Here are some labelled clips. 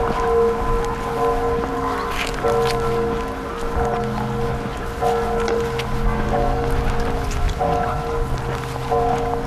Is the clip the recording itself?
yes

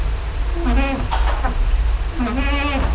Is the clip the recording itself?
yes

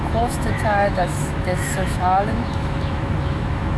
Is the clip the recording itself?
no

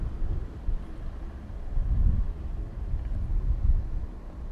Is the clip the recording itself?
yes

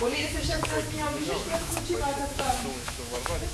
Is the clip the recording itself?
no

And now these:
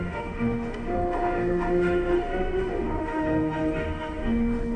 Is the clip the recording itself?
no